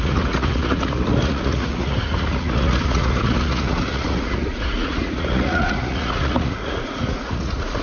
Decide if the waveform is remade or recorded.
remade